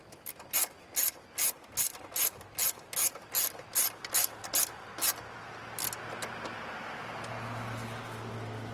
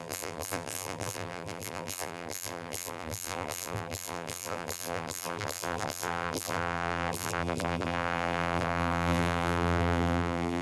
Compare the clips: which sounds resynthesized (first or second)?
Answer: second